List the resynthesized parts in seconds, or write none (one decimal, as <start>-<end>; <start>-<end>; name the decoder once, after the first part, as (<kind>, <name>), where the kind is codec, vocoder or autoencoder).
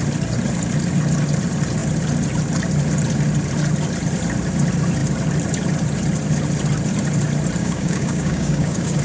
7.6-9.0 (codec, DAC)